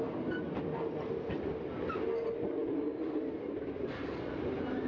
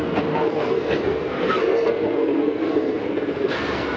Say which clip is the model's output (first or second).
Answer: second